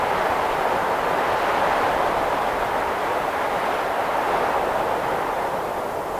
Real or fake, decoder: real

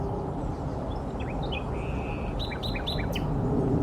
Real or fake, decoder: real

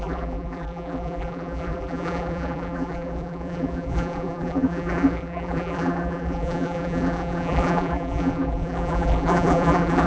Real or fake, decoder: fake, vocoder, BigVGAN v2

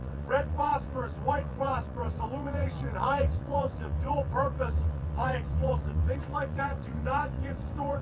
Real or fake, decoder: fake, vocoder, WaveNeXt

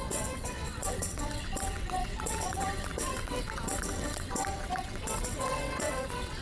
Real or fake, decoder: fake, vocoder, WaveNeXt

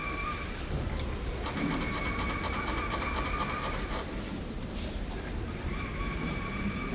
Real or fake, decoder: fake, vocoder, BigVGAN v2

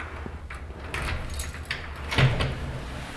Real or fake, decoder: real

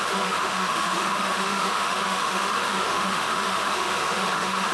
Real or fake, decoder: fake, autoencoder, DAC-VAE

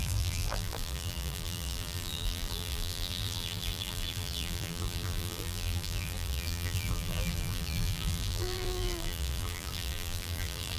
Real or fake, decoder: fake, vocoder, BigVGAN v2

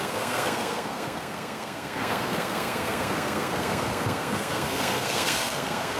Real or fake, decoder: fake, codec, SNAC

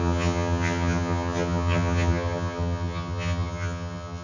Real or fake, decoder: fake, vocoder, HiFi-GAN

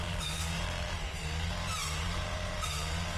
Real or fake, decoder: fake, vocoder, BigVGAN v2